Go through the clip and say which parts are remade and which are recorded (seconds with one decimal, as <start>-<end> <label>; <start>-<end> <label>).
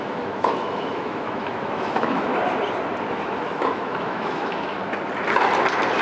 0.0-2.3 remade; 2.3-3.1 recorded; 3.1-4.8 remade; 4.8-6.0 recorded